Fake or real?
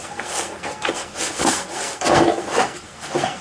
fake